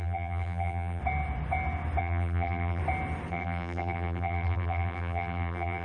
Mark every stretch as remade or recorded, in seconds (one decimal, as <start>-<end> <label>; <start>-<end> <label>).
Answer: 0.0-1.0 remade; 1.0-2.0 recorded; 2.0-2.8 remade; 2.8-3.3 recorded; 3.3-5.8 remade